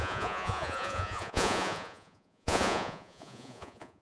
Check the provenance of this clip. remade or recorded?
remade